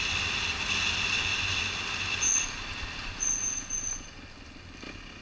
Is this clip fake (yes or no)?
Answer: no